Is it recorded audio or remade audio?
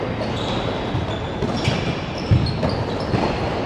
recorded